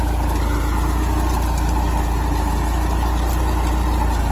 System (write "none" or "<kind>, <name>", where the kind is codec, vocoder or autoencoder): none